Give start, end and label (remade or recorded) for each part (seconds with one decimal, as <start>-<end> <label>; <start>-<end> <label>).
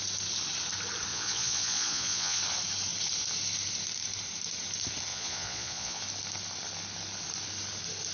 0.0-1.1 recorded; 1.1-2.4 remade; 2.4-5.1 recorded; 5.1-6.0 remade; 6.0-8.1 recorded